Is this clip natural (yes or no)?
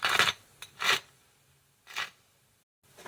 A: yes